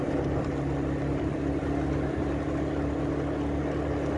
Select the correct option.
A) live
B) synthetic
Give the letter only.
A